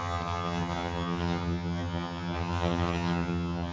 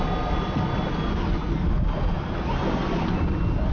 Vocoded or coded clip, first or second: first